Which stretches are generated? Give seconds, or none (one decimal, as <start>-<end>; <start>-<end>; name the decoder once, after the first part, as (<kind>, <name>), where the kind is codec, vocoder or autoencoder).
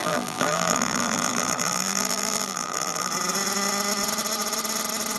0.0-3.1 (vocoder, BigVGAN v2)